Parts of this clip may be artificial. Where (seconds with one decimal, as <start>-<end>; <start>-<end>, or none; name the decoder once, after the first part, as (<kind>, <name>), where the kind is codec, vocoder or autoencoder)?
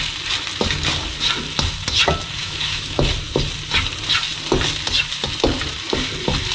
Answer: 2.4-3.0 (autoencoder, DAC-VAE)